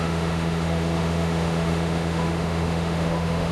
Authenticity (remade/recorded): remade